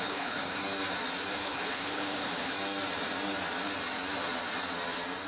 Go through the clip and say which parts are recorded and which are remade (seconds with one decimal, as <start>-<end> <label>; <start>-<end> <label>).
0.0-0.6 remade; 0.6-1.3 recorded; 1.3-2.5 remade; 2.5-5.3 recorded